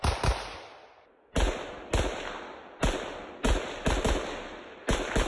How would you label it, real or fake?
real